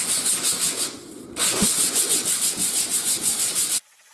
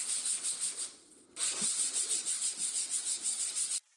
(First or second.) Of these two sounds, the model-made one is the first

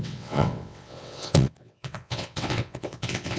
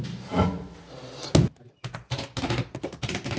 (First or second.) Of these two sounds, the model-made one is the first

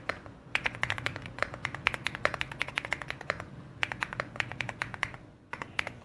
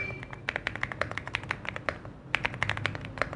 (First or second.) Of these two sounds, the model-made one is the first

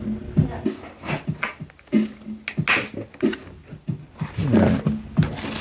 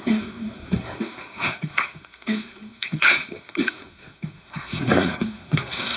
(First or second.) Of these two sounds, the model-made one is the second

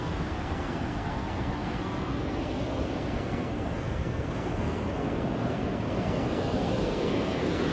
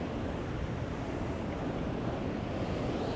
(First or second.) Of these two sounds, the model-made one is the first